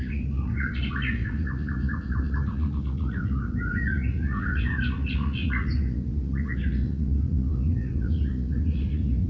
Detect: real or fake fake